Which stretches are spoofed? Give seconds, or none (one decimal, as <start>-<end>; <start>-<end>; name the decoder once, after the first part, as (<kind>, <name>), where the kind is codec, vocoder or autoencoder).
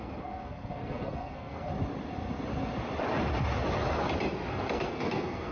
0.0-1.7 (codec, SNAC); 4.5-5.5